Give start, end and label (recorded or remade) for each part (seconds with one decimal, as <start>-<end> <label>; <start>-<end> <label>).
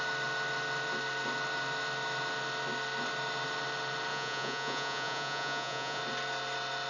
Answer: 0.0-4.1 recorded; 4.1-6.0 remade; 6.0-6.9 recorded